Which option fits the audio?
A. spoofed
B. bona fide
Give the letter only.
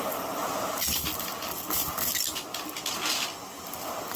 B